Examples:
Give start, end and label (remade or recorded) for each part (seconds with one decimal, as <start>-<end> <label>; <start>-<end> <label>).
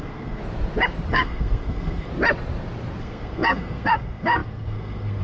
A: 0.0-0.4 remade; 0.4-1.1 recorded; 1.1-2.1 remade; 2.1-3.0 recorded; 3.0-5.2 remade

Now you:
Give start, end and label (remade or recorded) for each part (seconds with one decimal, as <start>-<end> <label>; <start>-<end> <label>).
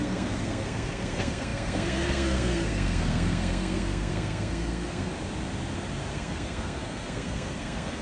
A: 0.0-5.1 remade; 5.1-6.1 recorded; 6.1-8.0 remade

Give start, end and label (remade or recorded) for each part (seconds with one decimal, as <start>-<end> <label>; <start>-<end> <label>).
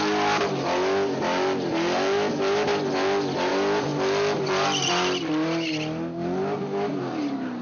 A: 0.0-2.7 remade; 2.7-3.5 recorded; 3.5-3.9 remade; 3.9-7.6 recorded